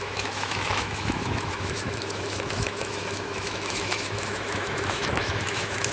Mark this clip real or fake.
fake